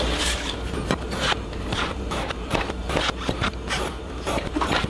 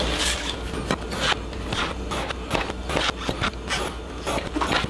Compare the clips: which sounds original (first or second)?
second